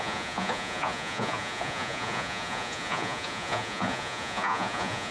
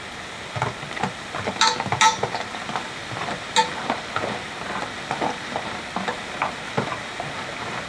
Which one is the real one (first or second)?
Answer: second